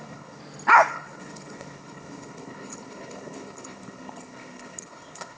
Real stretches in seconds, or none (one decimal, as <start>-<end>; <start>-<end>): 0.4-0.9